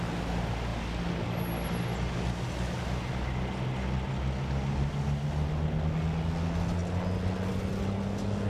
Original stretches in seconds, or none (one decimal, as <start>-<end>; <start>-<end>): 0.0-8.5